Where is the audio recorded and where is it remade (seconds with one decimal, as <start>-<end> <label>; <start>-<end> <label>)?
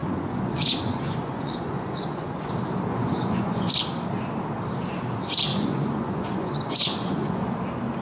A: 0.0-2.5 remade; 2.5-2.9 recorded; 2.9-3.7 remade; 3.7-5.5 recorded; 5.5-7.5 remade; 7.5-8.0 recorded